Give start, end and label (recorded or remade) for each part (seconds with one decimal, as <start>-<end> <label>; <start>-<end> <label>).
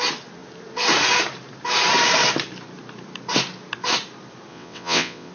0.0-4.5 recorded; 4.5-5.3 remade